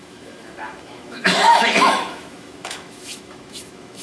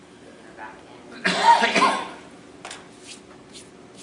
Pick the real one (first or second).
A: second